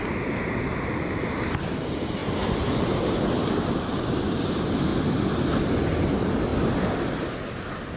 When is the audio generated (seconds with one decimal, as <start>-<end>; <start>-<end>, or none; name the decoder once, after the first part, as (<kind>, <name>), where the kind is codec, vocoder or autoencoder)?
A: none